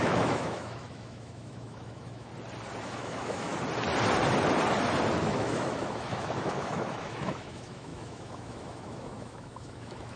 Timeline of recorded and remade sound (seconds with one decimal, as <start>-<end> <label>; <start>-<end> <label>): 0.0-2.3 remade; 2.3-2.8 recorded; 2.8-3.5 remade; 3.5-5.2 recorded; 5.2-10.2 remade